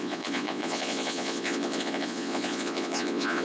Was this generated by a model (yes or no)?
yes